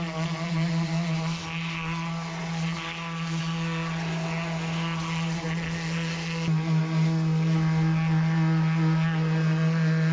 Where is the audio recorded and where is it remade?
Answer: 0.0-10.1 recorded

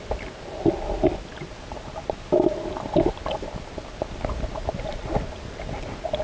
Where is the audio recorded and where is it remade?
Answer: 0.0-6.2 recorded

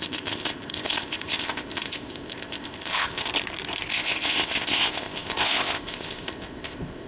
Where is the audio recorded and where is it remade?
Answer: 0.0-3.3 remade; 3.3-3.9 recorded; 3.9-7.1 remade

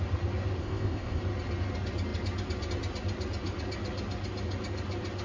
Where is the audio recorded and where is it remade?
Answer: 0.0-0.6 recorded; 0.6-1.2 remade; 1.2-5.2 recorded

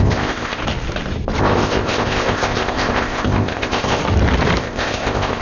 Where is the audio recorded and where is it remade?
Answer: 0.0-0.6 remade; 0.6-1.4 recorded; 1.4-4.0 remade; 4.0-4.6 recorded; 4.6-5.4 remade